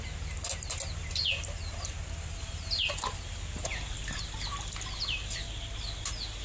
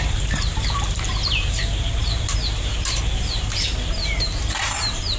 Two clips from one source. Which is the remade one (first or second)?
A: second